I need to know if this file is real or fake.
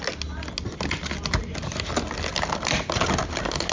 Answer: real